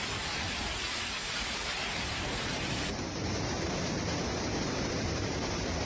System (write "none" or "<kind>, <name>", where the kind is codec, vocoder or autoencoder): vocoder, BigVGAN v2